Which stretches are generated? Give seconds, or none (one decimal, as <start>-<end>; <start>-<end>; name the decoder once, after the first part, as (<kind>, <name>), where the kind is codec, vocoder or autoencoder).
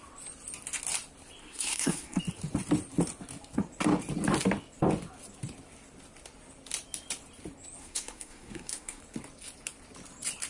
1.4-2.2 (codec, SNAC); 7.8-9.0